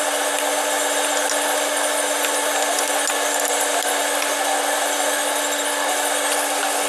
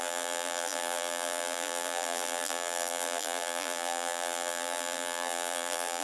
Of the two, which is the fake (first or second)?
second